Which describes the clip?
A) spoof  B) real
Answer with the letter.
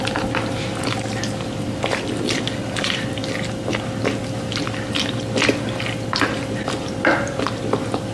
B